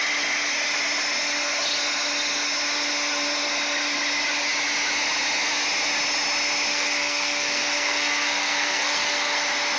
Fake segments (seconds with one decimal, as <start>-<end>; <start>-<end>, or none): 6.7-9.4